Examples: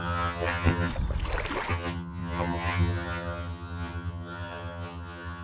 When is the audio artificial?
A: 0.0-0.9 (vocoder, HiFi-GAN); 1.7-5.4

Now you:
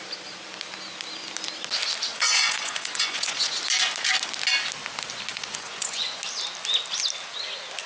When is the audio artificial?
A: 2.1-3.5 (vocoder, Vocos); 5.3-6.2